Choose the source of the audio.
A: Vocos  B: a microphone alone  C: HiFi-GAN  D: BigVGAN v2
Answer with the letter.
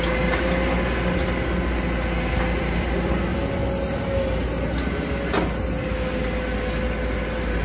B